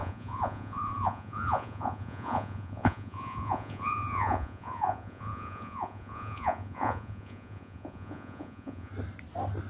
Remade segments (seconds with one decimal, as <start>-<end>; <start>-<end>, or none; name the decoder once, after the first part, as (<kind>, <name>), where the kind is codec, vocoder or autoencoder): 0.0-8.9 (vocoder, Vocos)